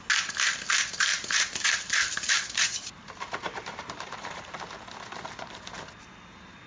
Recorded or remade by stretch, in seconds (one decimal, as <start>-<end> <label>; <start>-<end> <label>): 0.0-1.1 recorded; 1.1-4.8 remade; 4.8-6.7 recorded